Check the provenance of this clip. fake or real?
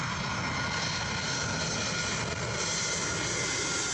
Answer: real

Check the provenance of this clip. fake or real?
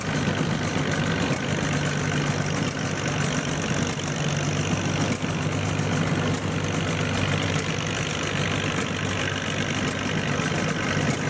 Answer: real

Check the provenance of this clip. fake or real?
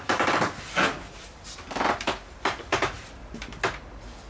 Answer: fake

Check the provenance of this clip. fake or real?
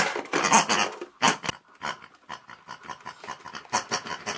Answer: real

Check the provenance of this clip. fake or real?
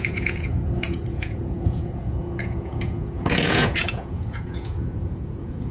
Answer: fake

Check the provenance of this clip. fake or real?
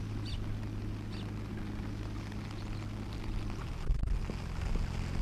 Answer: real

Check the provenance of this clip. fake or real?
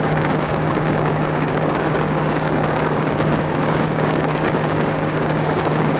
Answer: fake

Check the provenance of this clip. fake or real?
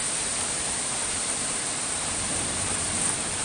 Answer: fake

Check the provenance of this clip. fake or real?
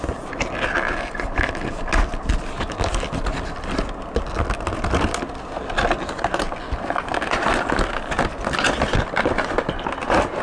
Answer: real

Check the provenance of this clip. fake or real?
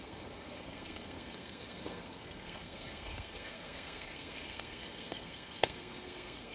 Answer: fake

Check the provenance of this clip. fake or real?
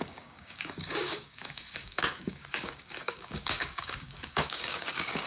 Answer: fake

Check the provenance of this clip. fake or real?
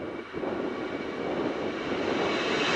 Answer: real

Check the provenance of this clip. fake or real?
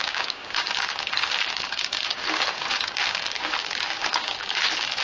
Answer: fake